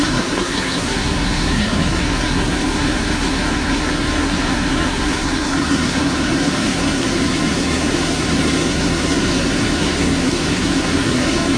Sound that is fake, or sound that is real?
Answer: fake